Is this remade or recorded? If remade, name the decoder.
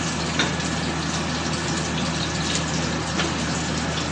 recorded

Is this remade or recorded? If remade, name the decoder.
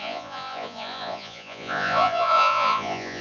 remade, vocoder, Vocos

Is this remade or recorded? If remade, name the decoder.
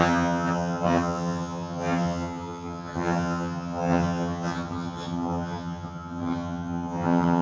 remade, vocoder, HiFi-GAN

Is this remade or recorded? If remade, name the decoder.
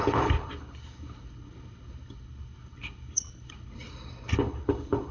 remade, codec, HILCodec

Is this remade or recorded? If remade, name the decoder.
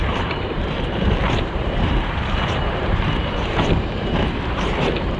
remade, vocoder, BigVGAN v2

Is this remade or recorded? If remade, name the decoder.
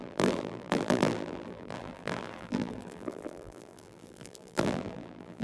remade, vocoder, BigVGAN v2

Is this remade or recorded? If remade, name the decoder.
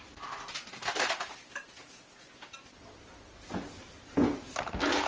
recorded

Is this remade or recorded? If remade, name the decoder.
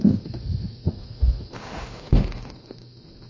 remade, autoencoder, DAC-VAE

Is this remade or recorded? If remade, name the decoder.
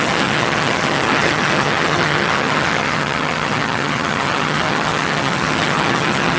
remade, vocoder, HiFi-GAN